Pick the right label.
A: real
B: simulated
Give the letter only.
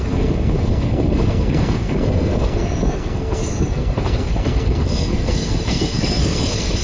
B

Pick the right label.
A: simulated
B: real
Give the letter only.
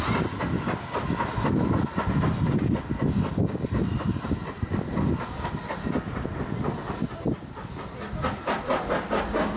B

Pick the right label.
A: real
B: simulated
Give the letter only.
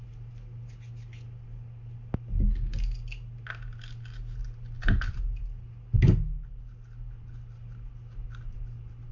A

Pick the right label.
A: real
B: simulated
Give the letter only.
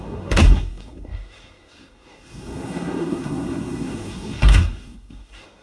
B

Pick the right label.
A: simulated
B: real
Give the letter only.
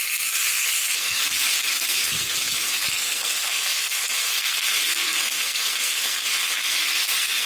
A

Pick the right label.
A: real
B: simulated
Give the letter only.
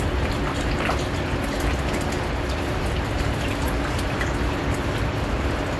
A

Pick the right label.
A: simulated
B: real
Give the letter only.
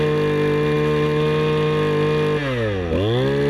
B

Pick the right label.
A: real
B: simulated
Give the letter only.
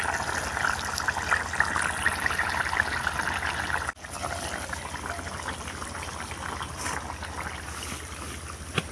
A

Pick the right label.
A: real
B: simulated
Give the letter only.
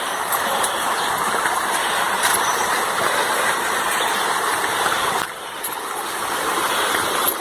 A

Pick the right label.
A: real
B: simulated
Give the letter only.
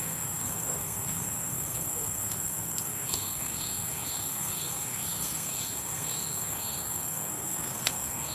B